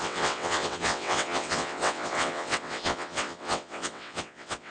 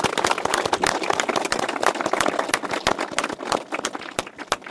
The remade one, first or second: first